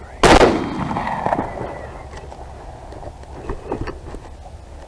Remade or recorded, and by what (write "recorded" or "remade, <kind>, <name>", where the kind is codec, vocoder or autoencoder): recorded